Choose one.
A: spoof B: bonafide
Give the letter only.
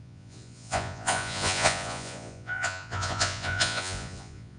A